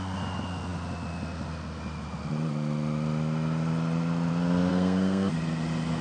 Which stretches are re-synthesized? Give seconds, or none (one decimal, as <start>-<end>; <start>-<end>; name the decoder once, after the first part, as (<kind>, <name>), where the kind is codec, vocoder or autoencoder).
4.7-5.3 (codec, SNAC)